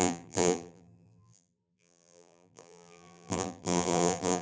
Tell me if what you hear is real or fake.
fake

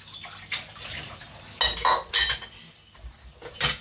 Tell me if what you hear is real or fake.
real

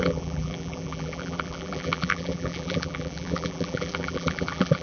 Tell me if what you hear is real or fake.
fake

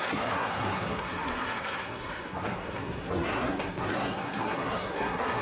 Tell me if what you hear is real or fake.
fake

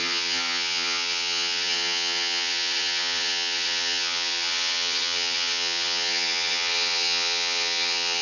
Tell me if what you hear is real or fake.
fake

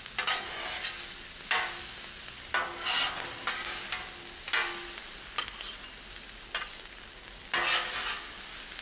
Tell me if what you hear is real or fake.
real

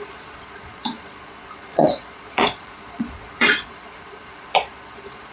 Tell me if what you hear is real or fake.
fake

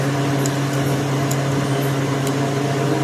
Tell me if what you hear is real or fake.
real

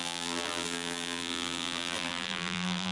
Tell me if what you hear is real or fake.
fake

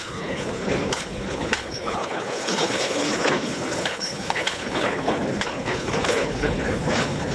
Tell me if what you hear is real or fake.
fake